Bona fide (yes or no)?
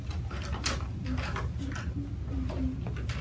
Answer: yes